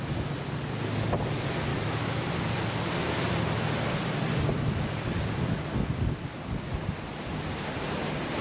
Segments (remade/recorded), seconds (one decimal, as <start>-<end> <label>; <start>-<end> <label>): 0.0-1.7 recorded; 1.7-2.3 remade; 2.3-8.4 recorded